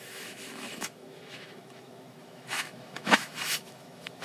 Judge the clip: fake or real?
fake